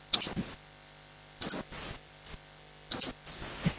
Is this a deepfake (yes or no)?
no